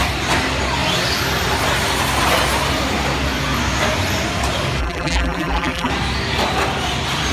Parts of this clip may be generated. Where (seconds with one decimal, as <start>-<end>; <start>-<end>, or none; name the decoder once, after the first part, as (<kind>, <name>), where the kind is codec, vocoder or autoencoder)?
4.8-5.9 (vocoder, BigVGAN v2)